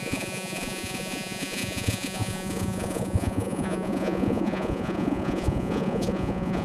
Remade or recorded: remade